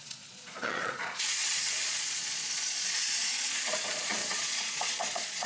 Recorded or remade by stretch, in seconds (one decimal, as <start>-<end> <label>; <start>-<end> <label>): 0.0-5.5 remade